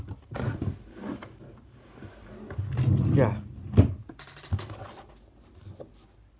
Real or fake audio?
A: real